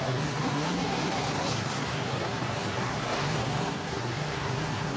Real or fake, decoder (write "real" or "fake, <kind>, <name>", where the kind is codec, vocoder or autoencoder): fake, codec, SNAC